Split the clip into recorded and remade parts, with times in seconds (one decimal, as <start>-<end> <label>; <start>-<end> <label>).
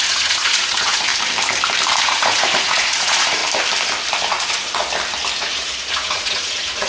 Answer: 0.0-1.1 remade; 1.1-2.0 recorded; 2.0-3.4 remade; 3.4-4.3 recorded; 4.3-4.8 remade; 4.8-5.4 recorded; 5.4-6.9 remade